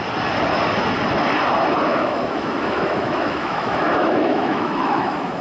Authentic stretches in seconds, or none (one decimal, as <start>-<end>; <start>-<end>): 0.0-1.9